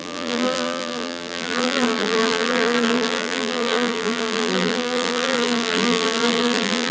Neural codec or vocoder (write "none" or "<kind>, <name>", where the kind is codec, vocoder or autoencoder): vocoder, BigVGAN v2